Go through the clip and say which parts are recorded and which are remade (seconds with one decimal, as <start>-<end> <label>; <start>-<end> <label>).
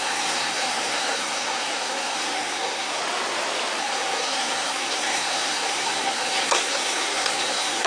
0.0-3.0 remade; 3.0-3.8 recorded; 3.8-7.9 remade